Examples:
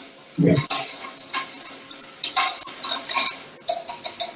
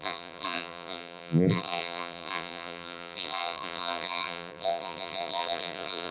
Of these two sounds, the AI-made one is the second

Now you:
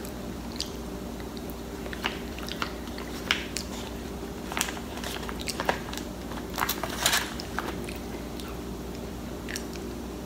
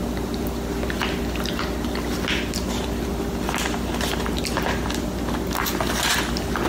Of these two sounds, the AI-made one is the first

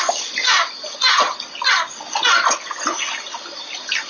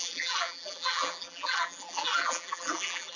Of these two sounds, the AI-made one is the second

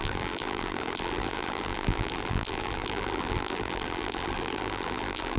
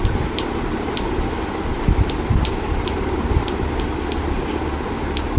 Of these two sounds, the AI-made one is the first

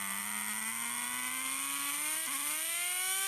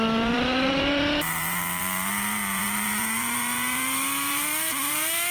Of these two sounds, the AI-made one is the second